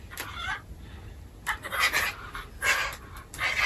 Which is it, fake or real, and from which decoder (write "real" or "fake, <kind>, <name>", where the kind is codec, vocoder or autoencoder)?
real